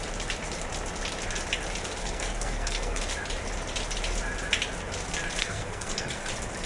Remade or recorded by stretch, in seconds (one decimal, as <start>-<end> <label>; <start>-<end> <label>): 0.0-2.0 recorded; 2.0-3.0 remade; 3.0-5.4 recorded; 5.4-6.3 remade; 6.3-6.7 recorded